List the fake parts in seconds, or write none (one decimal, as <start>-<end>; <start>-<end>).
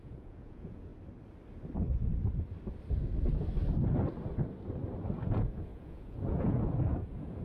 0.0-0.9; 5.3-7.4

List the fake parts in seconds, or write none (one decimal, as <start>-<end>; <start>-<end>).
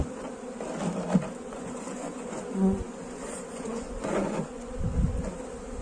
1.4-4.7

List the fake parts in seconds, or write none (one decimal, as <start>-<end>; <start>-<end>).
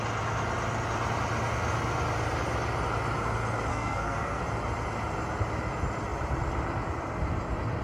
3.7-4.4